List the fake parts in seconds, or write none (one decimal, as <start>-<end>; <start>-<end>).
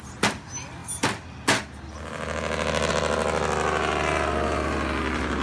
none